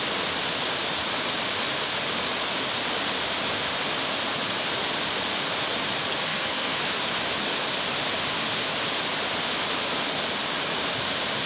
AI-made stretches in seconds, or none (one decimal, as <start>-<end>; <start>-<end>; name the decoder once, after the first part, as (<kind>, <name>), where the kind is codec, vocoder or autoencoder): 6.3-7.0 (codec, SNAC)